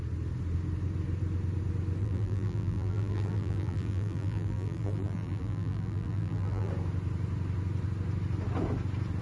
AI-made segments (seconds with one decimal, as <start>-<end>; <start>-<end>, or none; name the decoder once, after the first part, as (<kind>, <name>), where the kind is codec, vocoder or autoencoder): 2.0-6.7 (vocoder, BigVGAN v2)